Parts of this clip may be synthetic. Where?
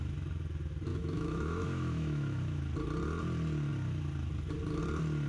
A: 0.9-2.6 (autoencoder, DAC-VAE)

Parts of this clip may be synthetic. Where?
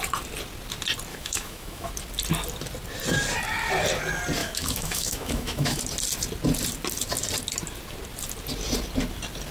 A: 1.1-1.9 (autoencoder, DAC-VAE); 4.4-5.8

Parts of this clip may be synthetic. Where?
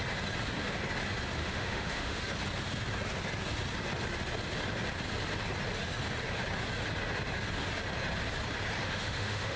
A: 1.4-2.2 (autoencoder, DAC-VAE); 8.8-9.6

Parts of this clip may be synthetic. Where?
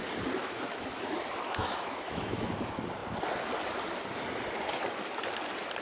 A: 0.4-1.2 (autoencoder, DAC-VAE); 1.6-2.5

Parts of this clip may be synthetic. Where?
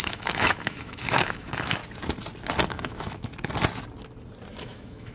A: 0.0-1.8 (autoencoder, DAC-VAE); 2.7-3.3; 4.6-5.1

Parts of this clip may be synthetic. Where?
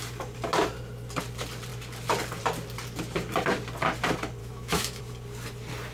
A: 4.4-5.0 (autoencoder, DAC-VAE)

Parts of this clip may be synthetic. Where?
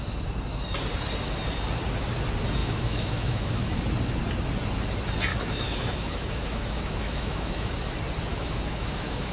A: 2.6-3.8 (autoencoder, DAC-VAE); 5.3-7.7; 8.3-9.3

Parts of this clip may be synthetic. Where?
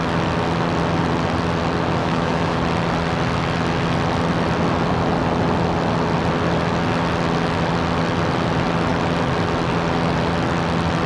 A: 2.0-2.6 (autoencoder, DAC-VAE)